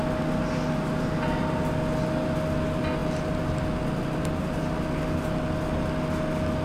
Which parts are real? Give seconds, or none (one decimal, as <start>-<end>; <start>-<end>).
0.0-6.6